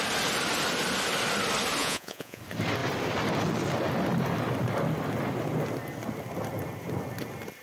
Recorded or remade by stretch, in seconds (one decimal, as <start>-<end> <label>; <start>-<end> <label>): 0.0-1.8 recorded; 1.8-2.4 remade; 2.4-7.6 recorded